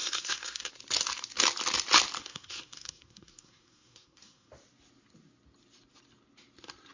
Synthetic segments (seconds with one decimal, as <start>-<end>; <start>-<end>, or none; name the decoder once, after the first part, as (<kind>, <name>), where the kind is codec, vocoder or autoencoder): 0.0-0.7 (codec, SNAC); 2.2-4.5